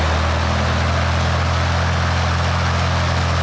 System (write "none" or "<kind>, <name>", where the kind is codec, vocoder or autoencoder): none